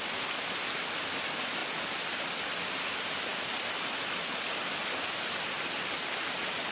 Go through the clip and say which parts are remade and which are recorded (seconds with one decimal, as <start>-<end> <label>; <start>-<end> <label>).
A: 0.0-6.7 recorded